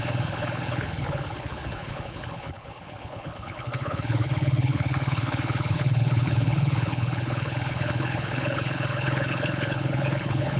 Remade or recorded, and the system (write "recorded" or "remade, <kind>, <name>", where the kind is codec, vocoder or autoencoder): remade, codec, HILCodec